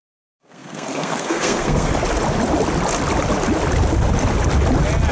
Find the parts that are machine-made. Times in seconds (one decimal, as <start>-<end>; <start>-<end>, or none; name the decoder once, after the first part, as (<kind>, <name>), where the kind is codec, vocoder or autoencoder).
0.0-1.9 (codec, SNAC)